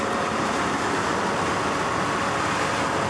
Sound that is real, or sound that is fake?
real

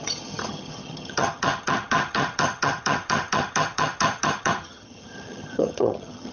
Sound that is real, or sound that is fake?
fake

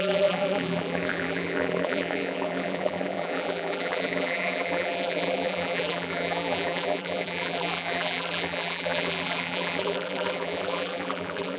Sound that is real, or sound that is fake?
fake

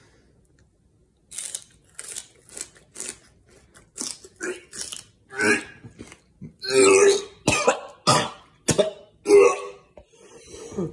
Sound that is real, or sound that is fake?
real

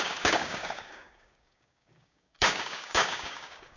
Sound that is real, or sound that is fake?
fake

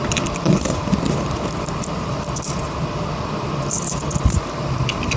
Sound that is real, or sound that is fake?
fake